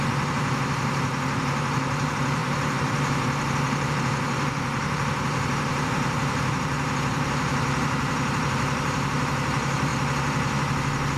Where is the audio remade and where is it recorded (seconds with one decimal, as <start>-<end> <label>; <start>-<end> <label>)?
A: 0.0-9.9 remade; 9.9-11.2 recorded